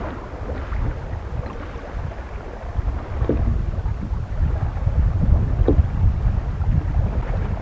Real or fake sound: real